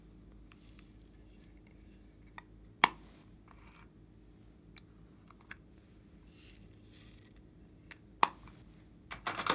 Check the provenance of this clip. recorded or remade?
recorded